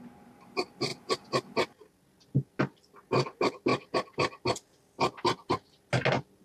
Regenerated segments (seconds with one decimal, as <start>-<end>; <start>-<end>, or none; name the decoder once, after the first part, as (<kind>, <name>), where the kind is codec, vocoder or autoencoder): none